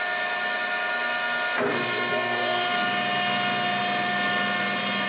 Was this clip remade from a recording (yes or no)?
no